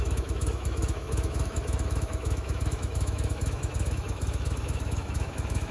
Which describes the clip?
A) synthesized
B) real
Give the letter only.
A